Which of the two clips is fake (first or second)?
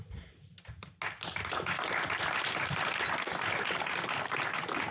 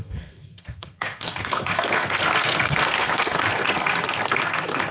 second